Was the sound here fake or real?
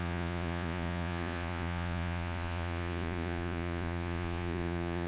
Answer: fake